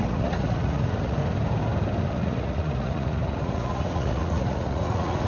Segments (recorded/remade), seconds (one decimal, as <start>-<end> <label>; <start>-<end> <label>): 0.0-1.2 remade; 1.2-2.0 recorded; 2.0-5.3 remade